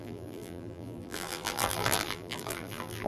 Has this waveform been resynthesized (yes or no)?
yes